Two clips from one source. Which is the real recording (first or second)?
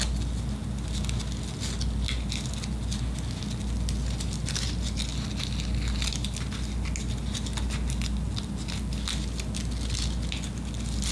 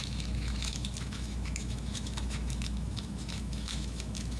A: first